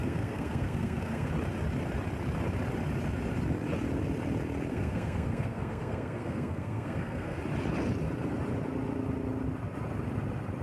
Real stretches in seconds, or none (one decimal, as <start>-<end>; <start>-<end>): 1.3-4.7; 7.4-10.6

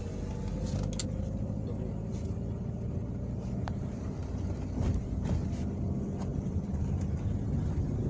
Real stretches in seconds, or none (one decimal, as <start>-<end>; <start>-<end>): 0.0-6.3; 6.8-8.1

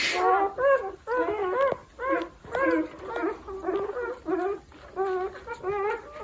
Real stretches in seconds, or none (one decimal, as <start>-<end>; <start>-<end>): 0.0-6.2

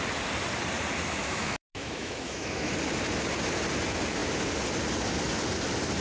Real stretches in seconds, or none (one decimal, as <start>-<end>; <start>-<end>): 0.0-1.2; 2.7-6.0

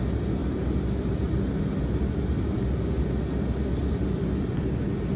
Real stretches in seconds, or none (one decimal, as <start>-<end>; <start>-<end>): 0.0-0.4; 2.6-3.8; 4.5-5.2

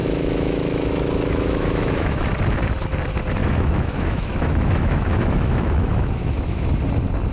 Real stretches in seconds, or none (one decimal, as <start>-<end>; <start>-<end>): 2.3-3.4; 6.7-7.3

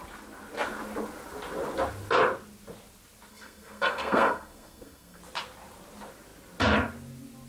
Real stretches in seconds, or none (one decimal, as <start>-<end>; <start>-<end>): 0.0-3.3; 5.2-7.5